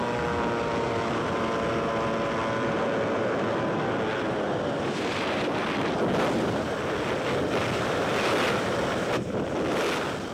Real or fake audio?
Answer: real